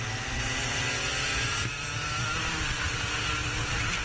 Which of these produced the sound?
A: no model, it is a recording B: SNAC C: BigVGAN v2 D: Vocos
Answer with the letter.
A